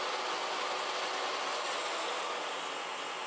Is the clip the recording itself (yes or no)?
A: yes